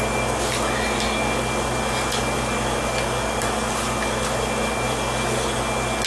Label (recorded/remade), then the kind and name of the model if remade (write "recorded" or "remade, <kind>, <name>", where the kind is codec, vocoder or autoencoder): recorded